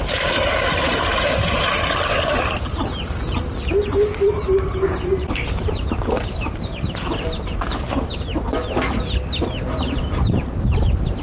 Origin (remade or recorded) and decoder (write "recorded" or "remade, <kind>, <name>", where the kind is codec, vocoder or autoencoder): remade, vocoder, BigVGAN v2